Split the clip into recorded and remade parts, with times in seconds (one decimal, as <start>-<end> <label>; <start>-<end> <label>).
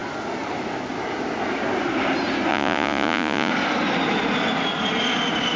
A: 0.0-2.5 recorded; 2.5-3.5 remade; 3.5-5.6 recorded